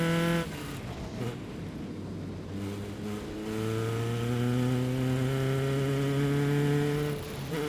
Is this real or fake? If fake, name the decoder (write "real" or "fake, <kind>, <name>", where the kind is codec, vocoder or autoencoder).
real